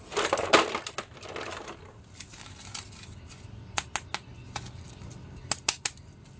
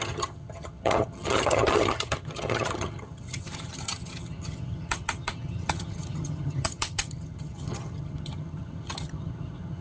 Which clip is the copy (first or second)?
second